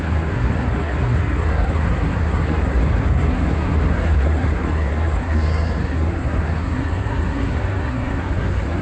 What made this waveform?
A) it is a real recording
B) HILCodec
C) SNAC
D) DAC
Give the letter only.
C